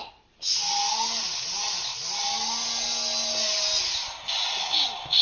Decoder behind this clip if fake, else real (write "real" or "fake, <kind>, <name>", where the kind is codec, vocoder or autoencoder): real